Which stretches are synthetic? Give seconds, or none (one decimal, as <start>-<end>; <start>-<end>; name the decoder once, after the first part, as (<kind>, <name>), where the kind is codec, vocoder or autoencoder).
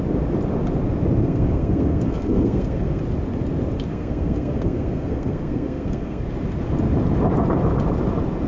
1.2-3.0 (codec, SNAC); 3.9-6.2